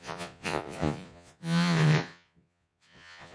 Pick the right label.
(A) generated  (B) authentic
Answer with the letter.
A